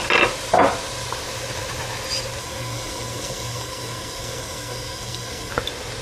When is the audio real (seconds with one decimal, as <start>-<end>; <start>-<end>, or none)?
0.0-2.4; 5.5-6.0